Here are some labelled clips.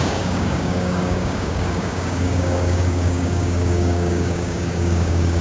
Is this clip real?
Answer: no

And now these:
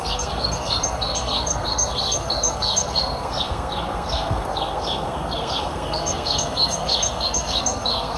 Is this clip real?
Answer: no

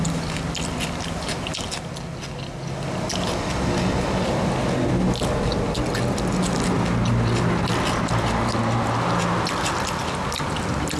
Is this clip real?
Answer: yes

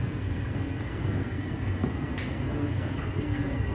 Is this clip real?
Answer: no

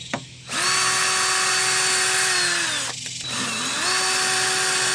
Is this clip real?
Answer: yes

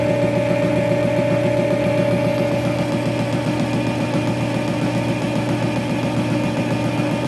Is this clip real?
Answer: yes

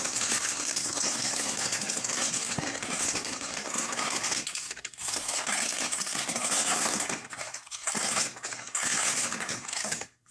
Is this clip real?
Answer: no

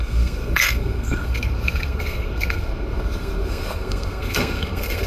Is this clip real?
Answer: no